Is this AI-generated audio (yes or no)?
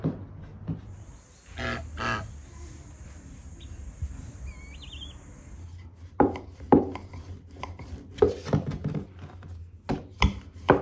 no